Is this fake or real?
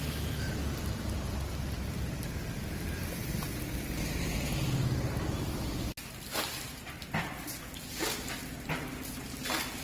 real